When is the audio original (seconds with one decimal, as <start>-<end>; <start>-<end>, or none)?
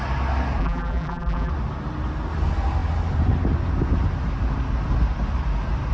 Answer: 0.0-0.6; 1.5-5.9